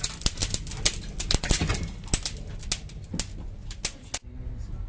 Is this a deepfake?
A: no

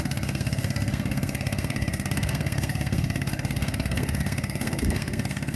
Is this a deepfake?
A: yes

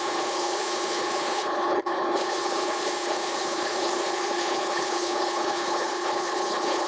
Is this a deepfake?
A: yes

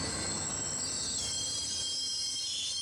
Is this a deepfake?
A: no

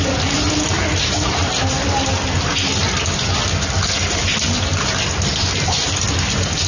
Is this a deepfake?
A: no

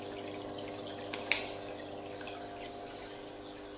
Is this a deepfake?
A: no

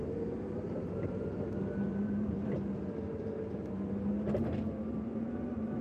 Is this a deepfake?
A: no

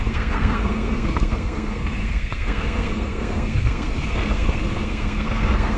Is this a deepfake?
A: yes